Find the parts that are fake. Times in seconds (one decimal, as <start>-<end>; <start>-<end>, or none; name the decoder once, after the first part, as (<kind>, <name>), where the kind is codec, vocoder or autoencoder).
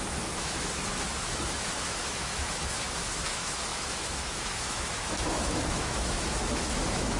0.0-7.2 (autoencoder, DAC-VAE)